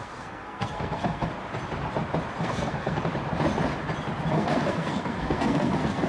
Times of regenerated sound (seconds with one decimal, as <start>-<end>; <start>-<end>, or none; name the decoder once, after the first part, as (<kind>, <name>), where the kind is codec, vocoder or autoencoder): 0.0-1.3 (codec, SNAC); 2.4-3.1; 4.3-6.1